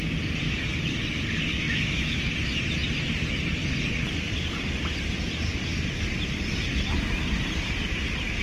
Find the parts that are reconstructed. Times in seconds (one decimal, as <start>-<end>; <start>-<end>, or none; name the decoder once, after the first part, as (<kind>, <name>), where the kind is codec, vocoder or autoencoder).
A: 1.5-2.2 (autoencoder, DAC-VAE)